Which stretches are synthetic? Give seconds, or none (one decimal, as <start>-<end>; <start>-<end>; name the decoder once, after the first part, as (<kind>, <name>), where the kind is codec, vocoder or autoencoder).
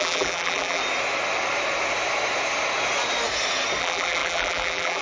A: 0.0-0.8 (vocoder, BigVGAN v2); 3.8-5.0